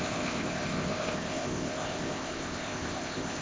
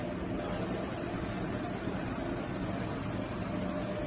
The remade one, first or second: first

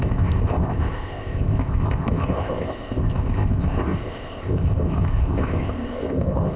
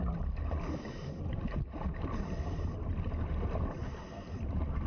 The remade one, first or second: first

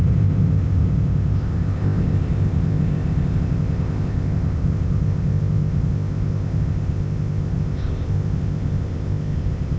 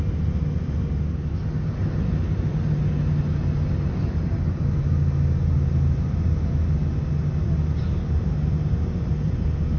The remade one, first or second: first